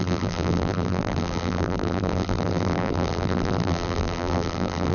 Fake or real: fake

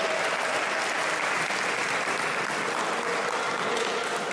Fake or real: real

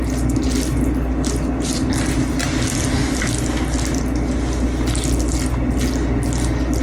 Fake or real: real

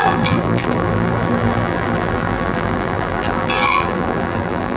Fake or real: fake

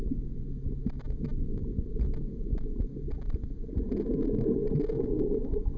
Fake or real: real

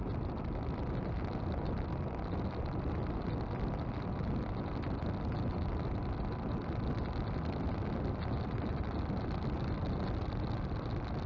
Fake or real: real